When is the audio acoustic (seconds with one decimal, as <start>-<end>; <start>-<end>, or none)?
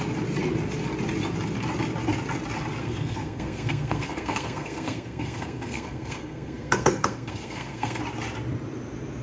0.0-2.8; 8.0-9.2